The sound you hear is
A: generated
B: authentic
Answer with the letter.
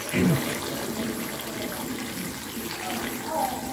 B